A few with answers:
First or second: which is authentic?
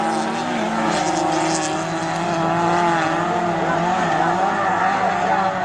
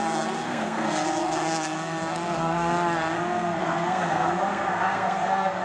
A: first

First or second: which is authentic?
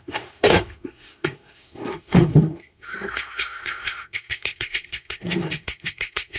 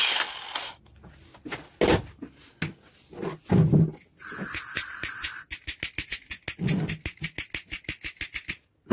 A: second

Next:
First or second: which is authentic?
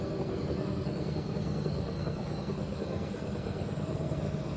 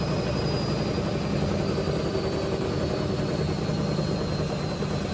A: second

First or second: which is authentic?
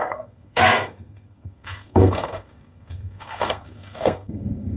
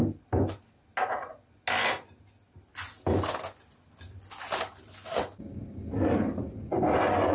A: second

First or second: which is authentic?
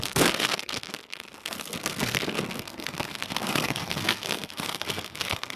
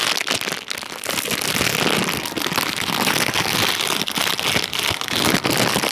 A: second